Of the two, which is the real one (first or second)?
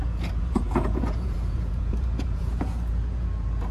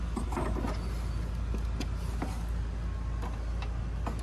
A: second